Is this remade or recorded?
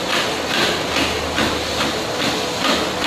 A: recorded